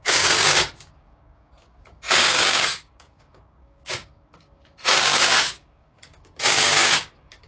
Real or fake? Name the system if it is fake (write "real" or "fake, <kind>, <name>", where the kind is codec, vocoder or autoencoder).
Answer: fake, codec, DAC